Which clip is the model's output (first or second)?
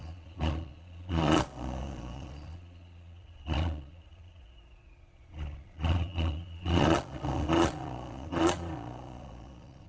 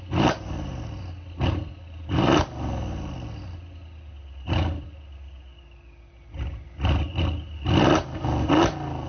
first